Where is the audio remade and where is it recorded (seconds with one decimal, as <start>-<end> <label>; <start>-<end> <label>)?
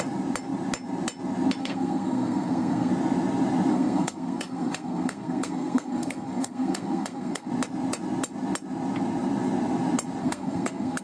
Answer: 0.0-1.6 recorded; 1.6-2.9 remade; 2.9-3.7 recorded; 3.7-7.5 remade; 7.5-10.2 recorded; 10.2-11.0 remade